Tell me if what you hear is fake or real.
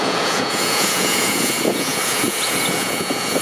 fake